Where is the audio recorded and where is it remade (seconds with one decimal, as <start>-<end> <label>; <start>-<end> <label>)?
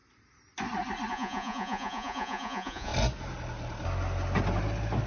0.0-1.1 recorded; 1.1-2.9 remade; 2.9-5.1 recorded